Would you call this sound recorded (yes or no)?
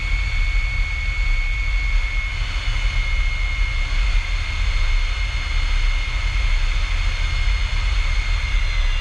yes